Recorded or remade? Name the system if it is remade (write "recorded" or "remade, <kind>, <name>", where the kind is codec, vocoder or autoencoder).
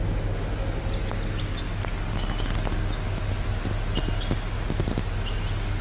recorded